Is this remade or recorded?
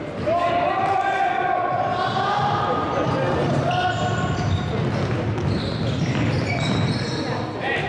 recorded